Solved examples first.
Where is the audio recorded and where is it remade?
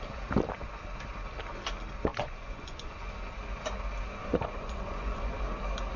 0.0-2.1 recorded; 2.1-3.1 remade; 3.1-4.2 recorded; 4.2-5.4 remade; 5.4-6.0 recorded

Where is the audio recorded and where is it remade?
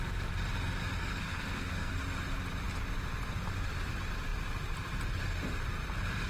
0.0-1.0 recorded; 1.0-1.9 remade; 1.9-6.3 recorded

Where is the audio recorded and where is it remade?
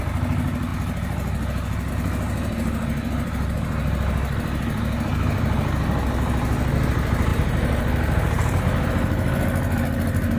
0.0-7.3 recorded; 7.3-8.6 remade; 8.6-10.4 recorded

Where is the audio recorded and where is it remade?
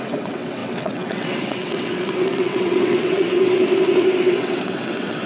0.0-3.6 remade; 3.6-4.3 recorded; 4.3-5.3 remade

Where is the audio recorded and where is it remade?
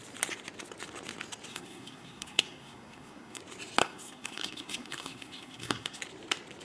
0.0-1.5 recorded; 1.5-3.4 remade; 3.4-3.8 recorded; 3.8-6.0 remade; 6.0-6.6 recorded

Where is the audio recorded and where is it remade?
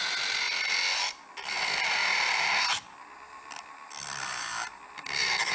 0.0-5.5 recorded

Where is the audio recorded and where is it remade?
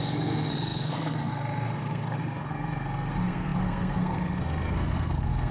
0.0-5.5 remade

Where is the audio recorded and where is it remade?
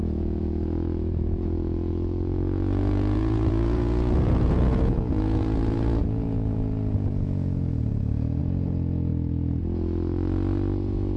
0.0-9.1 remade; 9.1-11.2 recorded